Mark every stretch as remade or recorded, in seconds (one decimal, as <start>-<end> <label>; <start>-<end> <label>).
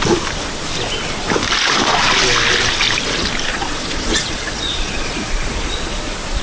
0.0-3.5 recorded; 3.5-6.0 remade; 6.0-6.4 recorded